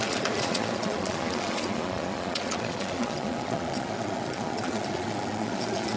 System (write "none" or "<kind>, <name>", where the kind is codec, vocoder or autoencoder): vocoder, Vocos